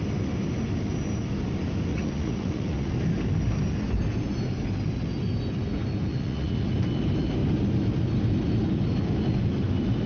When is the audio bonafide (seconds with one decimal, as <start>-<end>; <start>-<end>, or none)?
0.0-1.9; 2.9-6.1; 6.7-10.1